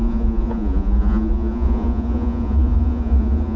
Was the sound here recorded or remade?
remade